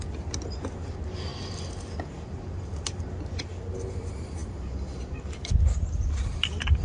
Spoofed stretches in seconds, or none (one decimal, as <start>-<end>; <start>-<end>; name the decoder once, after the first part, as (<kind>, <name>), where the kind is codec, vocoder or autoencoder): none